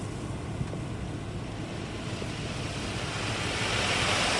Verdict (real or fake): real